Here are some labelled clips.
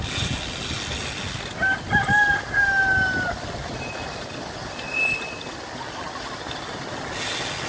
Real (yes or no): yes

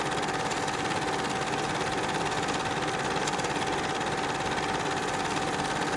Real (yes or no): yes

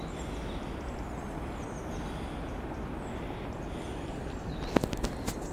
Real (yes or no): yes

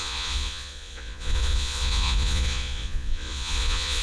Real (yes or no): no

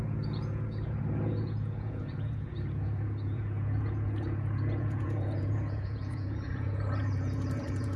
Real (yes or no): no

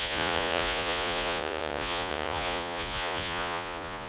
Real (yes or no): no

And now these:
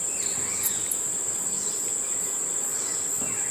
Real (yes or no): yes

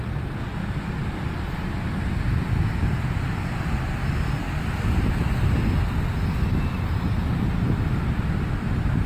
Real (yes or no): yes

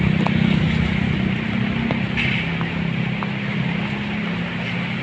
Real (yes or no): yes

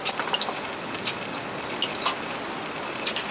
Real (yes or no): yes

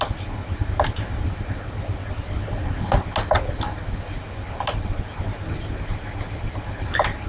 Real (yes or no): yes